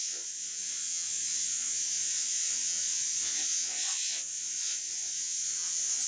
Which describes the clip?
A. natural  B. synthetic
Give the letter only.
B